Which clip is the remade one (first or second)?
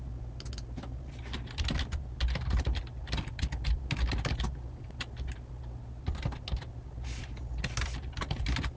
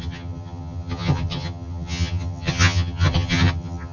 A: second